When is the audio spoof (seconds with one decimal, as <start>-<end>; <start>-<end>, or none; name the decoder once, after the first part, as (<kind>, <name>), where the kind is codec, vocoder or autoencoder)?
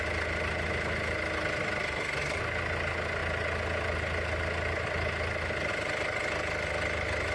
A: none